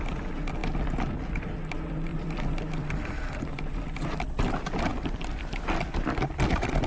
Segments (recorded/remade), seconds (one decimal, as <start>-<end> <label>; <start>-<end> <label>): 0.0-2.1 recorded; 2.1-4.5 remade; 4.5-4.9 recorded; 4.9-6.0 remade; 6.0-6.9 recorded